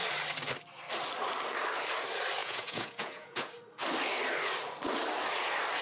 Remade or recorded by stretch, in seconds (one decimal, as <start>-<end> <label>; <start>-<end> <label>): 0.0-2.4 recorded; 2.4-3.5 remade; 3.5-5.8 recorded